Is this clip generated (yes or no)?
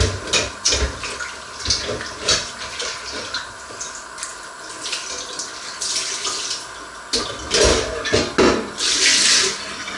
no